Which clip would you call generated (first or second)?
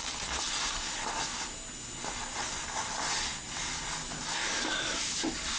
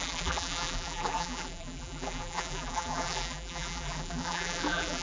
second